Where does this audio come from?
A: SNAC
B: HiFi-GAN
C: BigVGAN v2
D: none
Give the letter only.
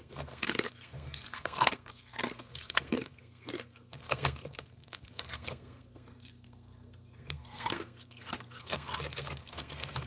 A